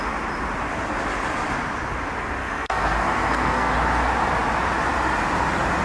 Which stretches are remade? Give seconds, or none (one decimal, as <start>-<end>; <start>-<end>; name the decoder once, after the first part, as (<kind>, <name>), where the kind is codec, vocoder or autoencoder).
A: 2.4-3.7 (codec, SNAC)